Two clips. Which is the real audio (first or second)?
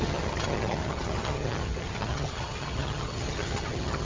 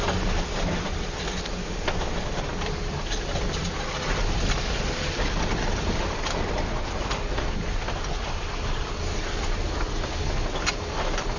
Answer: second